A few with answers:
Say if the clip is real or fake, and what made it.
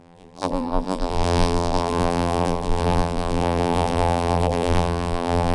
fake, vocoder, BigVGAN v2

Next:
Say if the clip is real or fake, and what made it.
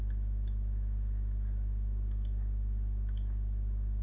real